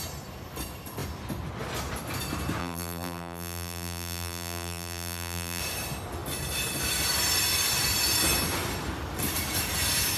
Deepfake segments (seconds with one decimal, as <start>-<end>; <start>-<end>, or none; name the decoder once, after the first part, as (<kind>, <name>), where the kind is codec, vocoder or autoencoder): 2.6-5.6 (vocoder, BigVGAN v2)

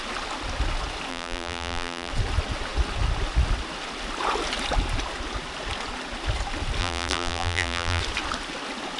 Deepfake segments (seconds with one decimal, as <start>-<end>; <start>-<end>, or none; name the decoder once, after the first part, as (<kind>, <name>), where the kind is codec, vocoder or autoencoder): 1.1-2.1 (vocoder, BigVGAN v2); 6.8-8.0

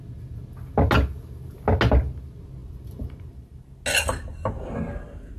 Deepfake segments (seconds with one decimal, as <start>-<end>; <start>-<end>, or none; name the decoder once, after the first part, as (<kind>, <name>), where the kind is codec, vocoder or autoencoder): 2.6-3.7 (vocoder, BigVGAN v2)

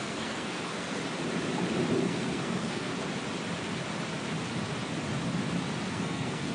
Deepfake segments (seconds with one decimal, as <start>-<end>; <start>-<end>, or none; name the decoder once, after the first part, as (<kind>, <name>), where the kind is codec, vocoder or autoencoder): 0.0-1.0 (codec, SNAC); 2.0-2.9; 5.9-6.5